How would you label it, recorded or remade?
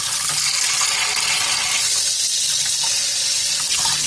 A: recorded